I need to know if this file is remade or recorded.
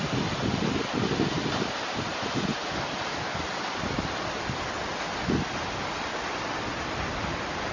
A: recorded